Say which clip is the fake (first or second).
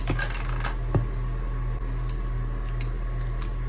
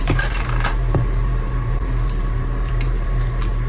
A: second